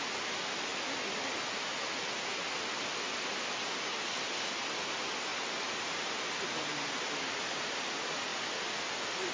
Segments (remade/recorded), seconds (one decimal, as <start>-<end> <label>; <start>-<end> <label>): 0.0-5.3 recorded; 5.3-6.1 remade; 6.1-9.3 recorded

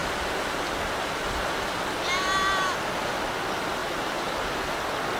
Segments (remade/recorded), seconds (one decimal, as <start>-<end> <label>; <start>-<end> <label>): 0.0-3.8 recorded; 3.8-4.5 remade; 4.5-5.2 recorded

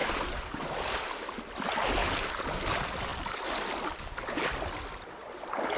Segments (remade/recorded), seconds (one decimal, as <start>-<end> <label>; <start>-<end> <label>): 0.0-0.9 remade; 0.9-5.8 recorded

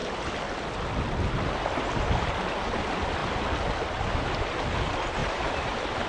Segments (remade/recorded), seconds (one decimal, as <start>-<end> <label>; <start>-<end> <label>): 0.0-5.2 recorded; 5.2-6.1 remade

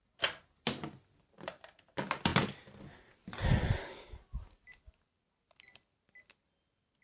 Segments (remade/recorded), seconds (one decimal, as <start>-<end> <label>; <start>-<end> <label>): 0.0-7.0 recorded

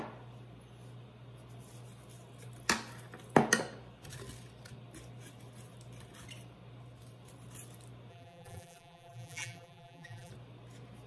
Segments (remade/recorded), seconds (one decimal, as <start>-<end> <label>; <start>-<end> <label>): 0.0-8.1 recorded; 8.1-10.3 remade; 10.3-11.1 recorded